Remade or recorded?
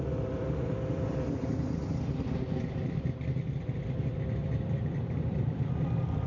remade